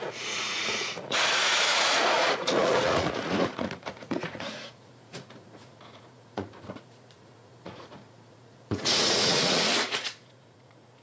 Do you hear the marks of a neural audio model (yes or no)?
yes